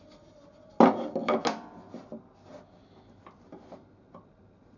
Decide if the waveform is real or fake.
real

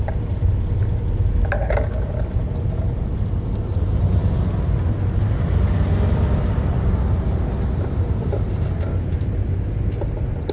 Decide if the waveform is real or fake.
real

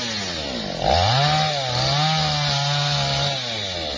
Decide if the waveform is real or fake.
real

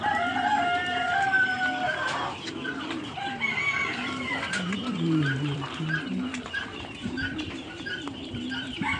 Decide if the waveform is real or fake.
fake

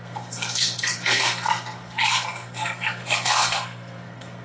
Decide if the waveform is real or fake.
fake